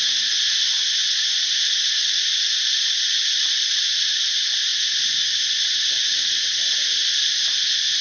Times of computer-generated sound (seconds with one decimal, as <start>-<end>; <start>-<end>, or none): none